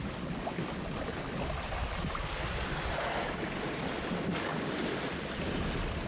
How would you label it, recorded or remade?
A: recorded